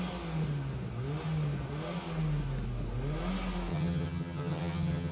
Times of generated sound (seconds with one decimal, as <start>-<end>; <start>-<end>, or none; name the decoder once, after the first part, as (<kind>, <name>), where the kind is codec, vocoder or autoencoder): 3.7-5.1 (vocoder, HiFi-GAN)